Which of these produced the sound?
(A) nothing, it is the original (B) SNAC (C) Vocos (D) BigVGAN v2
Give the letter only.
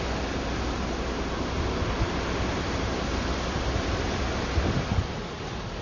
A